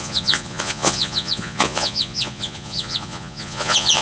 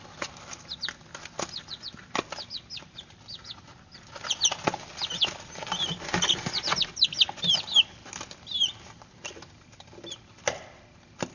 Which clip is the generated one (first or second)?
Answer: first